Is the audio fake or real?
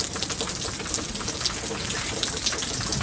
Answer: real